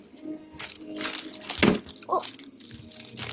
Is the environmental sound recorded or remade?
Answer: recorded